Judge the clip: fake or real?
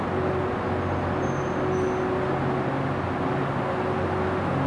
real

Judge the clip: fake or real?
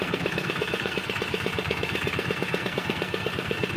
fake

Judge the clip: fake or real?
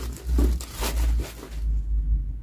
real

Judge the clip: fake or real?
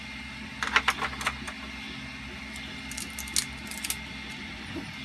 real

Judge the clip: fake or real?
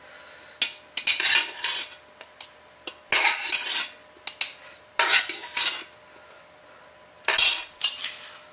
real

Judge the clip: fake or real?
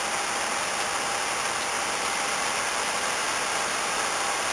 real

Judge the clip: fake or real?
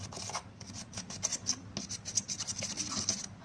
real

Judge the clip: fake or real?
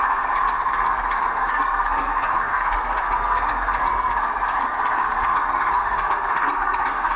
fake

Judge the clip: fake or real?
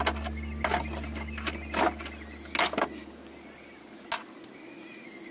real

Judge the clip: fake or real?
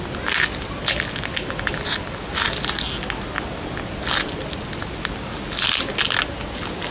real